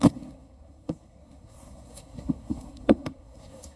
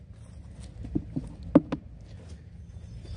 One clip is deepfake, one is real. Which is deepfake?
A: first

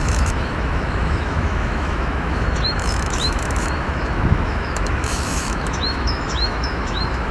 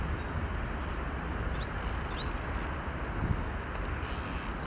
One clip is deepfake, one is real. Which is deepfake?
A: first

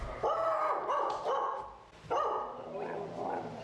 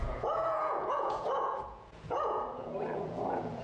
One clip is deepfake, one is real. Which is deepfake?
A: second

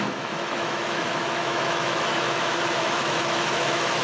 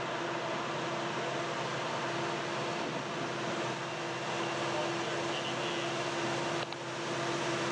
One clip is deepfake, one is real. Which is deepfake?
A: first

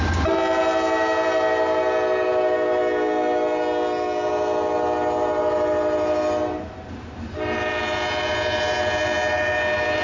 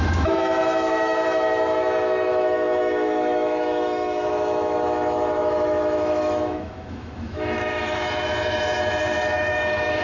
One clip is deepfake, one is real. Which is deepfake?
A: second